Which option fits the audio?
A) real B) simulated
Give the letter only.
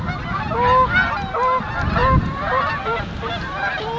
A